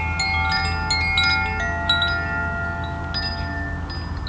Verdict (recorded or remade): recorded